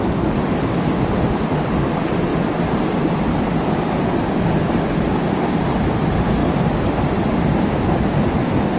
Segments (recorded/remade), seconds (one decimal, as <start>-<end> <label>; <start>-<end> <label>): 0.0-8.8 recorded